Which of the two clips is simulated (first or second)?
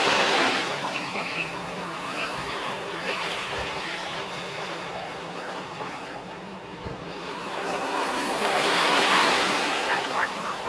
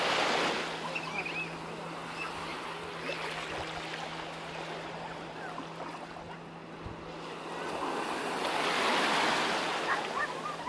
first